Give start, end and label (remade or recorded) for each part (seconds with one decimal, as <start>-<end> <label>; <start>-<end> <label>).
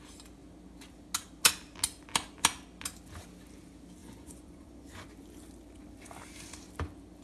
0.0-4.0 recorded; 4.0-4.9 remade; 4.9-7.2 recorded